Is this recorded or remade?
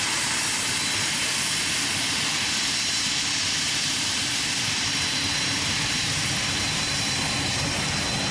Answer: remade